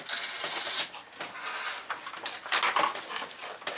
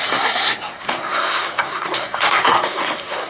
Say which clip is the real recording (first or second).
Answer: first